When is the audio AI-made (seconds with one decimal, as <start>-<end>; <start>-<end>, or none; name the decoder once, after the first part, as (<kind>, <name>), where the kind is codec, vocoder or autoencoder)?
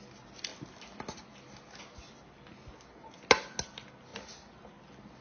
none